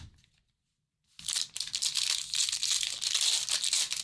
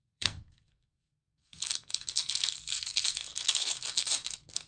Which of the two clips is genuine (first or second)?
first